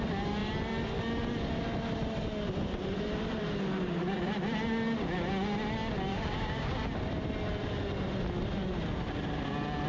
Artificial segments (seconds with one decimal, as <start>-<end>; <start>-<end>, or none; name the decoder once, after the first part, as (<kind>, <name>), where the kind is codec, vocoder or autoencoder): 6.1-6.7 (codec, DAC)

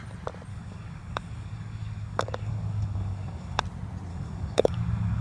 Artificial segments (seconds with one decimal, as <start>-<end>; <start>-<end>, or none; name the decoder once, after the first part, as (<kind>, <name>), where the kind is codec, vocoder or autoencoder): 0.5-3.6 (codec, DAC); 4.1-5.2

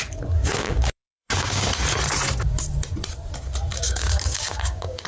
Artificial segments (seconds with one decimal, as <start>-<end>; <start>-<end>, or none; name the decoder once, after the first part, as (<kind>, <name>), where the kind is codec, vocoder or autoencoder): 0.6-1.7 (codec, DAC); 3.7-5.1

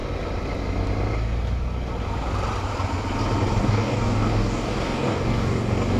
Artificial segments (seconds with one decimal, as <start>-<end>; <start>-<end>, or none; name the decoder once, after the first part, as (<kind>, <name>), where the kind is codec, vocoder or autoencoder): 3.6-6.0 (codec, DAC)